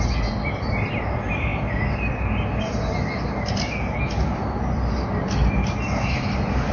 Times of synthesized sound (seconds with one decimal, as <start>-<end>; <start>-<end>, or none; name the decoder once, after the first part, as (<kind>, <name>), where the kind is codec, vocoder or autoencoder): none